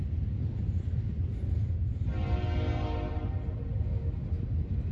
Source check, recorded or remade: recorded